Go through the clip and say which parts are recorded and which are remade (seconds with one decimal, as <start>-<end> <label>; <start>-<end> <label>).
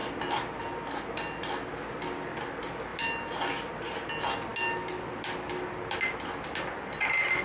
0.0-7.4 recorded